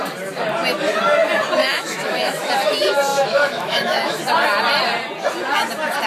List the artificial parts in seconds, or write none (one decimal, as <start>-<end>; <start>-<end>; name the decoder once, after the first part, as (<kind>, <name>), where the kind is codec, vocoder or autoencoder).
1.6-2.5 (autoencoder, DAC-VAE); 3.1-4.2